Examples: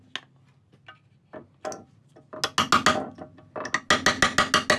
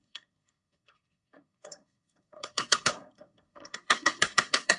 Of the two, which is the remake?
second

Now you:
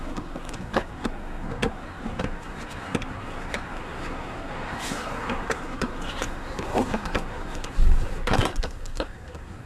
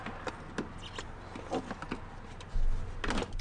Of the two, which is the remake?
first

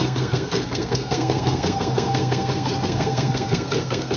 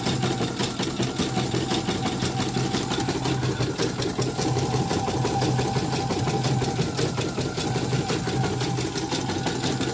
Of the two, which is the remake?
first